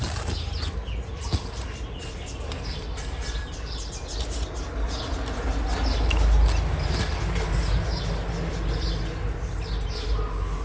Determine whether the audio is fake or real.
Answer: real